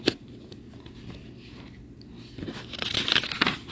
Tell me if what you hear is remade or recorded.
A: recorded